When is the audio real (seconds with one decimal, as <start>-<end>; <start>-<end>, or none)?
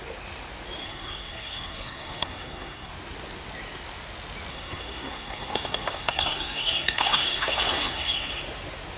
0.0-0.8; 2.9-4.5; 8.4-9.0